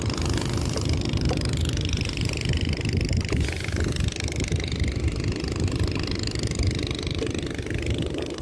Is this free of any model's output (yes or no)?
yes